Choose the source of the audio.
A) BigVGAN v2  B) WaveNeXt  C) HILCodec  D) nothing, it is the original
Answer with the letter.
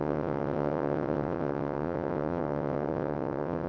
B